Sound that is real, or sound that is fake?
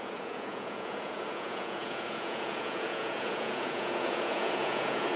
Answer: fake